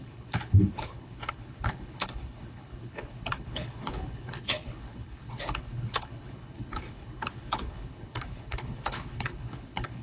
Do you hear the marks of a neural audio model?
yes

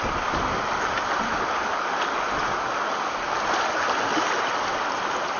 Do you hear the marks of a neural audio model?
no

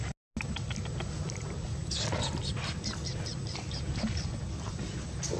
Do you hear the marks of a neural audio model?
no